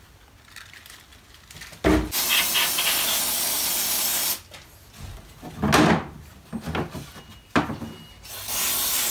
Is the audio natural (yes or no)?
yes